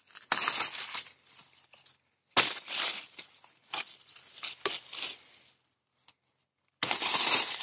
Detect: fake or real real